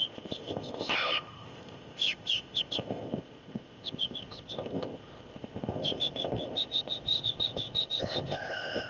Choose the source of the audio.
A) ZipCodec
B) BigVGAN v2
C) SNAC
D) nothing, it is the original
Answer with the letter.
A